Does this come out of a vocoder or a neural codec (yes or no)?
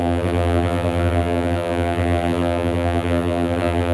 yes